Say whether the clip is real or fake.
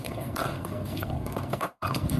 fake